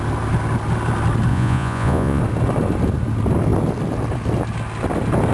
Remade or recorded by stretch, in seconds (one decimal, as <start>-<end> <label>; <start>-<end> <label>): 0.0-1.3 recorded; 1.3-2.2 remade; 2.2-5.3 recorded